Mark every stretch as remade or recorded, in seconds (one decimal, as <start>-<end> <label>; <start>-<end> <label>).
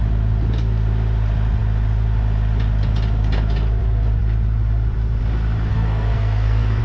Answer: 0.0-5.7 recorded; 5.7-6.8 remade